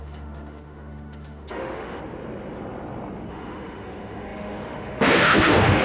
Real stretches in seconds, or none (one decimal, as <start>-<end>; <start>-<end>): 2.0-3.3